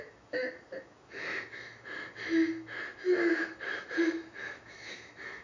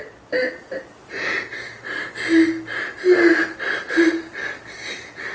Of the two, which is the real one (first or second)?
second